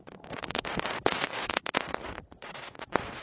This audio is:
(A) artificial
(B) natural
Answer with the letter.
A